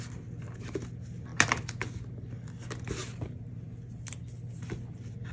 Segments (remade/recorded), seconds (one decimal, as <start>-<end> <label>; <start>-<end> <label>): 0.0-5.3 recorded